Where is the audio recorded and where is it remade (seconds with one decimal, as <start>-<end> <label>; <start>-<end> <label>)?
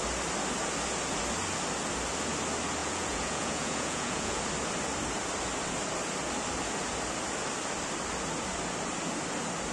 0.0-2.8 recorded; 2.8-4.4 remade; 4.4-9.7 recorded